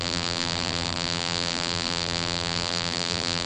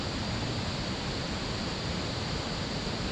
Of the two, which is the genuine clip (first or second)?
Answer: second